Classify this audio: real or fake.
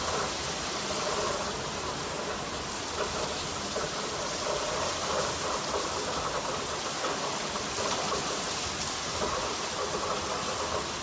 real